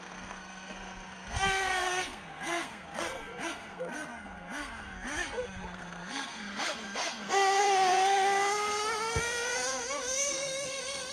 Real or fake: fake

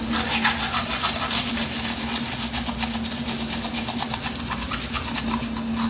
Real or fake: real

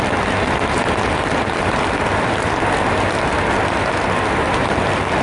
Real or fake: real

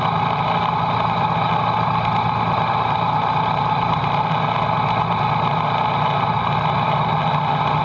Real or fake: real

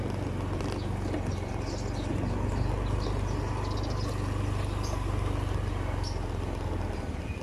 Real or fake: real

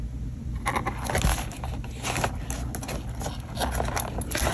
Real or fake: real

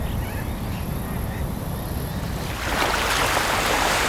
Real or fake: real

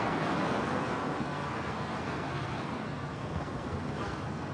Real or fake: fake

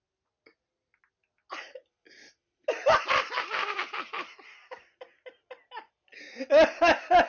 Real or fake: real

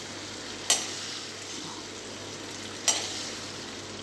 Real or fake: real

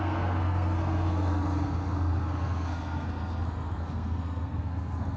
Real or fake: fake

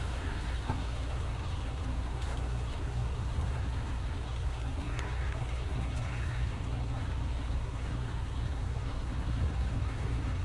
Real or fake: fake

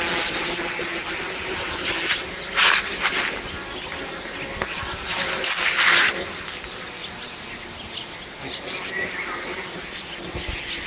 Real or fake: real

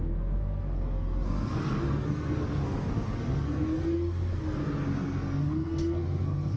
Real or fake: fake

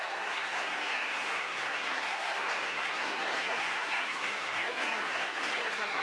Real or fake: fake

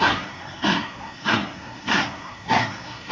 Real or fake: fake